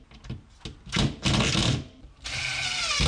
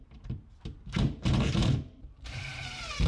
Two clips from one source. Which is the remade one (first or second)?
second